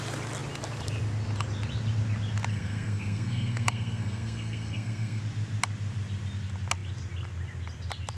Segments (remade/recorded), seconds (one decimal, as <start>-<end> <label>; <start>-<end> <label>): 0.0-2.5 recorded; 2.5-5.2 remade; 5.2-8.2 recorded

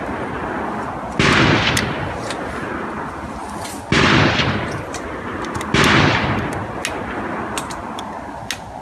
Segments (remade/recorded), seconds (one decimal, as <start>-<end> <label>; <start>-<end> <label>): 0.0-8.8 recorded

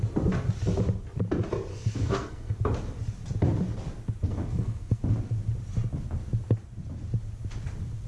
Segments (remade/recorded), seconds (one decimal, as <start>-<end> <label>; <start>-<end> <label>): 0.0-1.7 recorded; 1.7-2.6 remade; 2.6-4.3 recorded; 4.3-5.0 remade; 5.0-8.1 recorded

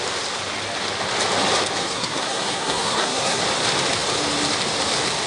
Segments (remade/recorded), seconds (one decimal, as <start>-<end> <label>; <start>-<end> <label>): 0.0-1.8 recorded; 1.8-3.4 remade; 3.4-5.3 recorded

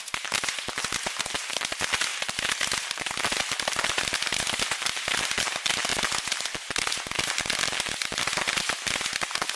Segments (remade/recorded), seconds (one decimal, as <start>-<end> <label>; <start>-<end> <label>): 0.0-9.6 recorded

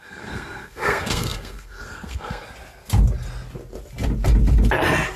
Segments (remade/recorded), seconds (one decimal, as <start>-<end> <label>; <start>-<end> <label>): 0.0-2.4 remade; 2.4-5.2 recorded

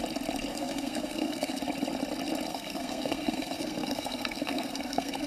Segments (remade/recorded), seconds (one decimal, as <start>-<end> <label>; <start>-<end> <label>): 0.0-0.5 recorded; 0.5-1.6 remade; 1.6-2.5 recorded; 2.5-5.3 remade